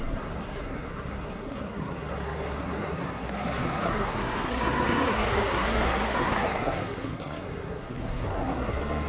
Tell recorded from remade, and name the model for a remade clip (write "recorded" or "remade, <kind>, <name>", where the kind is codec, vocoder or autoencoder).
remade, codec, SNAC